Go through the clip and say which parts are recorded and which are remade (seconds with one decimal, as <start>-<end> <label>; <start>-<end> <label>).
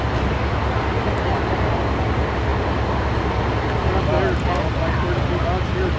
0.0-6.0 recorded